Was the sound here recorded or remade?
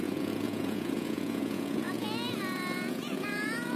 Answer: remade